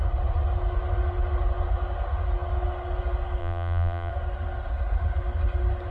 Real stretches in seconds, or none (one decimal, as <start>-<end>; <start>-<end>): 0.0-3.4; 4.1-5.9